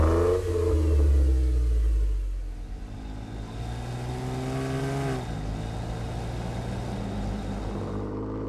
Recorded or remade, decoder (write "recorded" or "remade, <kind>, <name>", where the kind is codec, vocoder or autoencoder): recorded